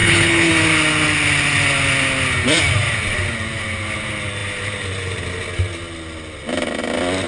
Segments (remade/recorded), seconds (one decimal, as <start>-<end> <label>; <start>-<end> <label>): 0.0-0.5 remade; 0.5-7.3 recorded